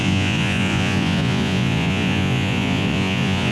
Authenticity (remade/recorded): remade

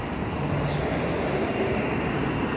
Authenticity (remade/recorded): recorded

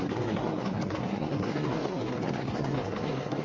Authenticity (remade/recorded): remade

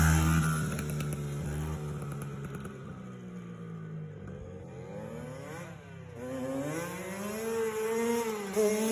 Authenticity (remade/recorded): recorded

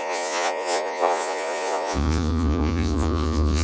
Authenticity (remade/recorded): remade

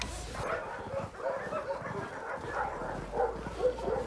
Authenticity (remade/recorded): recorded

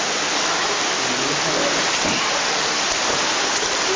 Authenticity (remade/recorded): recorded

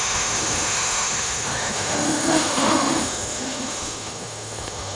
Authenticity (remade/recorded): remade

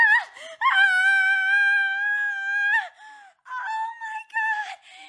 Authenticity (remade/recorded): recorded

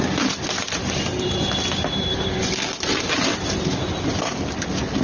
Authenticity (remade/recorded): recorded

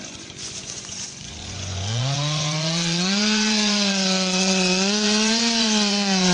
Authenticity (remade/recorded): remade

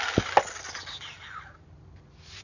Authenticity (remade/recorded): recorded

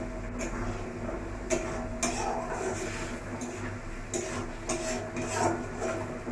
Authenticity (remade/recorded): recorded